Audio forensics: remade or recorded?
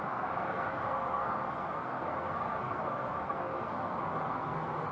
remade